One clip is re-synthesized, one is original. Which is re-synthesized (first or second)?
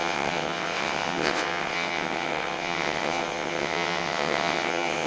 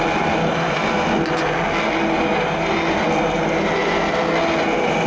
first